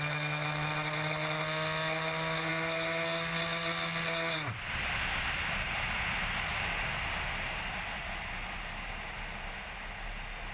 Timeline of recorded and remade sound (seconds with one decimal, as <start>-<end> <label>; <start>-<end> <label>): 0.0-10.5 recorded